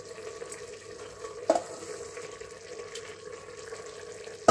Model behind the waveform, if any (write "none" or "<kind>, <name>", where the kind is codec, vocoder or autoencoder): none